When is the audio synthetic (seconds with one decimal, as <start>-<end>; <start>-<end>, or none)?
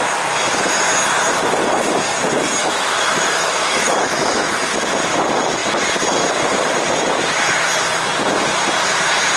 2.6-4.5